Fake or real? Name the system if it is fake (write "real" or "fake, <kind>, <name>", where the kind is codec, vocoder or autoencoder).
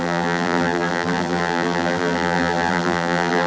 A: fake, vocoder, BigVGAN v2